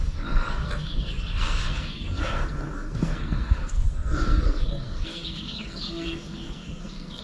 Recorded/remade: remade